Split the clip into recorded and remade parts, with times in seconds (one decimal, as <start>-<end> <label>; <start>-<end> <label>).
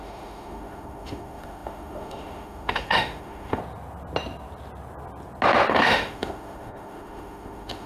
0.0-3.6 remade; 3.6-5.7 recorded; 5.7-7.9 remade